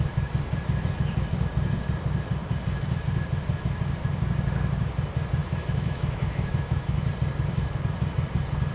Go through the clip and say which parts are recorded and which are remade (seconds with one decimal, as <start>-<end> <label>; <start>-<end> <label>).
0.0-5.4 recorded; 5.4-7.1 remade; 7.1-8.7 recorded